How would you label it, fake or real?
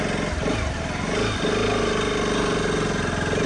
real